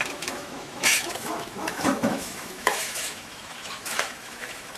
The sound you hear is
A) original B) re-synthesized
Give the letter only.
B